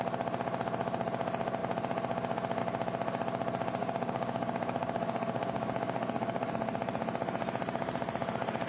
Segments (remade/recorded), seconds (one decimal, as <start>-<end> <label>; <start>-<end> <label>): 0.0-3.8 recorded; 3.8-6.5 remade; 6.5-8.7 recorded